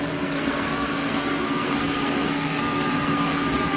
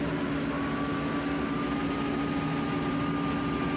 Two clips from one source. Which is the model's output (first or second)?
first